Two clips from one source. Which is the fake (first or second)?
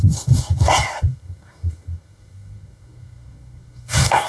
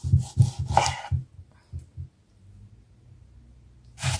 first